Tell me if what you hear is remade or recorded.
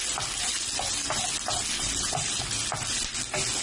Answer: recorded